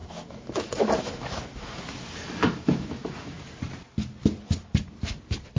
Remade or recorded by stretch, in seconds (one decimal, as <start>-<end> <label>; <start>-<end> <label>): 0.0-1.8 remade; 1.8-2.4 recorded; 2.4-3.4 remade; 3.4-5.6 recorded